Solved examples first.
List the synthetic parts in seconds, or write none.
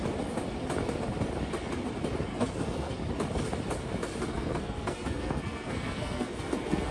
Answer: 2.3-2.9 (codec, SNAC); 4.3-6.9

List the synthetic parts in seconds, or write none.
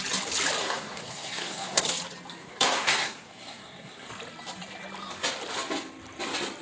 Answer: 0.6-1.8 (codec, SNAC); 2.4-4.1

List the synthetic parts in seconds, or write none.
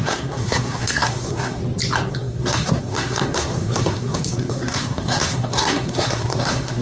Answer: 0.0-1.6 (codec, SNAC); 2.1-6.8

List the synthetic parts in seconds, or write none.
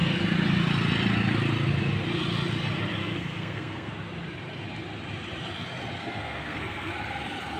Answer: 3.0-3.9 (codec, SNAC); 6.0-6.9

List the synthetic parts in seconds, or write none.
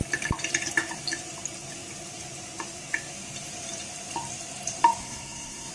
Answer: 5.0-5.7 (codec, SNAC)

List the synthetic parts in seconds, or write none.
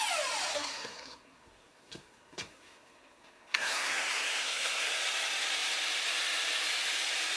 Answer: 0.5-4.9 (codec, SNAC)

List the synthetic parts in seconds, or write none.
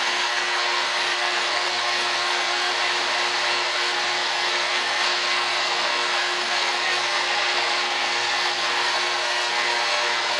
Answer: 0.0-2.7 (codec, SNAC); 3.5-10.4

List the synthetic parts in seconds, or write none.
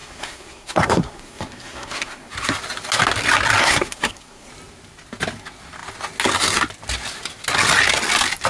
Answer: 0.0-2.3 (codec, SNAC); 3.6-4.5